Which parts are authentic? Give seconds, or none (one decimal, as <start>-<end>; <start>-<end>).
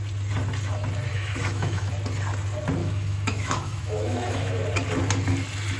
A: 0.0-1.1; 1.9-2.8; 4.5-5.8